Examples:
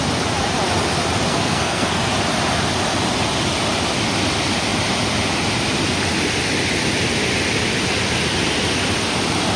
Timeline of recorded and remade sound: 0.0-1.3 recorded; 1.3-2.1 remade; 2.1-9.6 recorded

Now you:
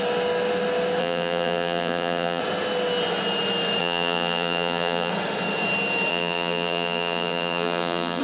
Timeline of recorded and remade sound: 0.0-1.0 recorded; 1.0-2.4 remade; 2.4-3.8 recorded; 3.8-5.1 remade; 5.1-6.1 recorded; 6.1-8.2 remade

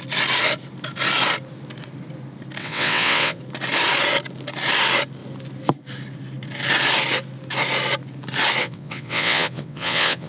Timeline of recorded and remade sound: 0.0-2.6 recorded; 2.6-3.4 remade; 3.4-8.6 recorded; 8.6-10.3 remade

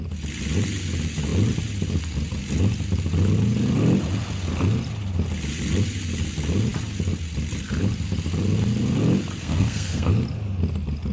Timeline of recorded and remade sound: 0.0-9.4 recorded; 9.4-10.1 remade; 10.1-11.1 recorded

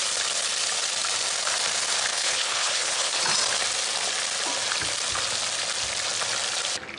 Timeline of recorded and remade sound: 0.0-2.1 recorded; 2.1-3.2 remade; 3.2-7.0 recorded

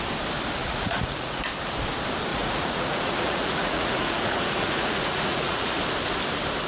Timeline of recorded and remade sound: 0.0-0.6 recorded; 0.6-1.4 remade; 1.4-2.3 recorded; 2.3-5.8 remade; 5.8-6.7 recorded

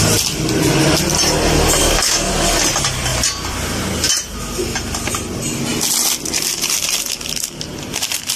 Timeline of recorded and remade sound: 0.0-1.8 recorded; 1.8-2.3 remade; 2.3-8.4 recorded